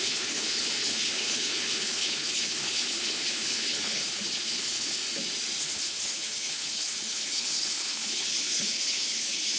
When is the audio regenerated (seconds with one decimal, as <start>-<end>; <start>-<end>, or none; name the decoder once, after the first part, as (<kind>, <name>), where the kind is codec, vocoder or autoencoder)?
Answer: 0.0-5.0 (codec, HILCodec); 5.6-9.6